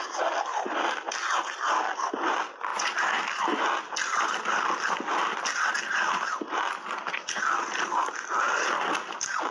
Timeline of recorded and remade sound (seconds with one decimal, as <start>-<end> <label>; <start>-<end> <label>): 0.0-9.5 recorded